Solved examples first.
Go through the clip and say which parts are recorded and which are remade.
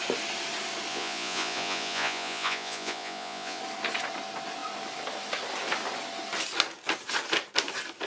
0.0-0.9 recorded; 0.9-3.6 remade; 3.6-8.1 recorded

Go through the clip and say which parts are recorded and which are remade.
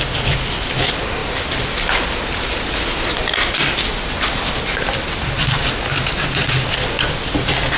0.0-7.8 recorded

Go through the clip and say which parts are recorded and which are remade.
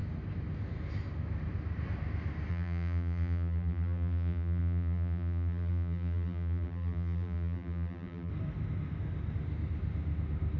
0.0-2.5 recorded; 2.5-8.3 remade; 8.3-10.6 recorded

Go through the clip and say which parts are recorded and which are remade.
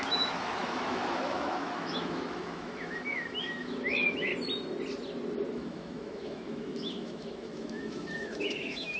0.0-4.3 remade; 4.3-5.5 recorded; 5.5-9.0 remade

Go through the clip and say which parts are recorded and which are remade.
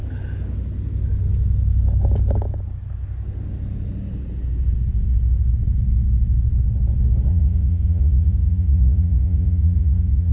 0.0-7.3 recorded; 7.3-10.3 remade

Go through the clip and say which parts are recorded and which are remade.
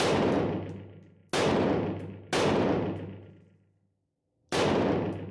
0.0-5.3 recorded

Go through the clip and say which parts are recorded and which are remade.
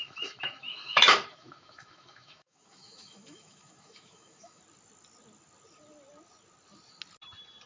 0.0-4.6 remade; 4.6-7.7 recorded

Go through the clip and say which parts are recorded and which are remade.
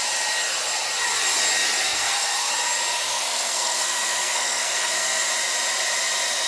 0.0-1.8 recorded; 1.8-2.5 remade; 2.5-3.1 recorded; 3.1-5.3 remade; 5.3-6.5 recorded